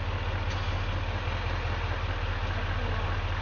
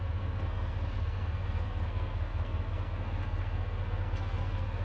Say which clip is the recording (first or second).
first